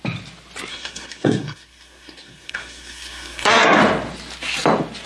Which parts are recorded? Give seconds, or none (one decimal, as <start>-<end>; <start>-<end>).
0.0-0.7; 3.8-5.1